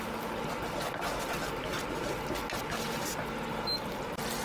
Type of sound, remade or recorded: recorded